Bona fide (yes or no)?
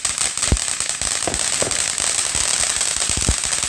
yes